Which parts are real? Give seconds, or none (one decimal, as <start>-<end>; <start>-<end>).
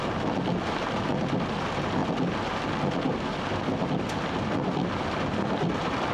0.0-6.1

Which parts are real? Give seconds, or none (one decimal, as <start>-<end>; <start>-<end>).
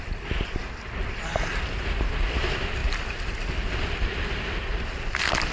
0.0-5.5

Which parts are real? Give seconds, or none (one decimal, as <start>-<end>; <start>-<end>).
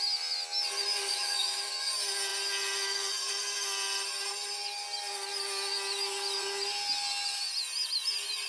0.0-1.1; 1.7-8.5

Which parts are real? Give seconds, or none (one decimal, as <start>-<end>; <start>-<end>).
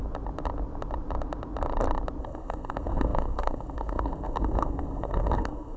0.0-2.2